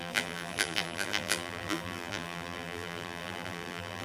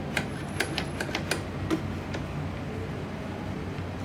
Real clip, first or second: second